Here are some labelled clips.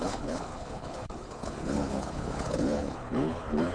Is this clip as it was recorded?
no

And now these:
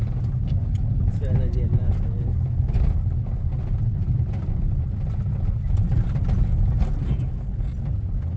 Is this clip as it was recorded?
yes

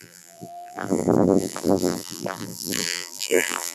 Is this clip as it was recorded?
no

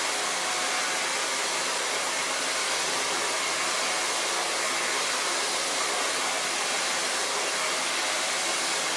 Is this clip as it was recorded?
yes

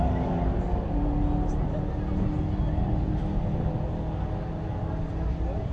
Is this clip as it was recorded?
yes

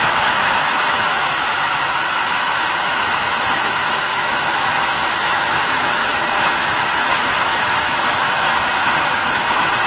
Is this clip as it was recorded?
no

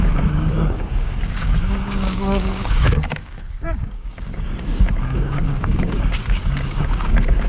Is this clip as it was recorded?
no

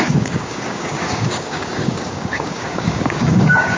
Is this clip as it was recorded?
no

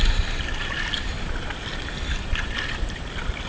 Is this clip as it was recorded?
yes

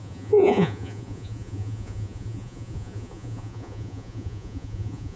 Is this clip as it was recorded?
no